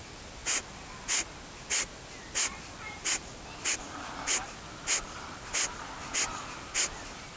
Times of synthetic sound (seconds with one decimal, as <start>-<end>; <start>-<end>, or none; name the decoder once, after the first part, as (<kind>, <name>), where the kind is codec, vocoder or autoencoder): none